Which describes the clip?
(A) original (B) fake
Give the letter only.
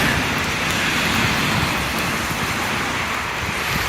A